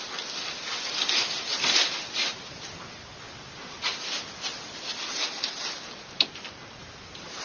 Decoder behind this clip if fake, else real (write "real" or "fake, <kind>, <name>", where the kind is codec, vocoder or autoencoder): real